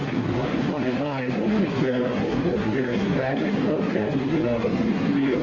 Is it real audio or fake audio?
fake